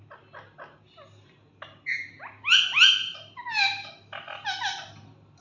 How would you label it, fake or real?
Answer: real